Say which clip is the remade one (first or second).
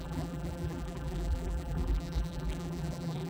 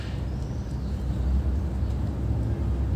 first